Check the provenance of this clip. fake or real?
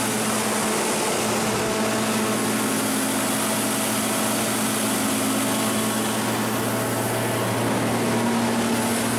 real